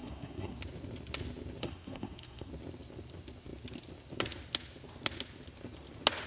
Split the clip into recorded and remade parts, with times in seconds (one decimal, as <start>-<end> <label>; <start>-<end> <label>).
0.0-0.6 remade; 0.6-1.6 recorded; 1.6-2.5 remade; 2.5-6.3 recorded